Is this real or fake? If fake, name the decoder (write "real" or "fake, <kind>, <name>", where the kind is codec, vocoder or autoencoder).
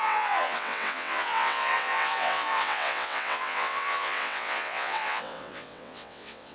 fake, vocoder, WaveNeXt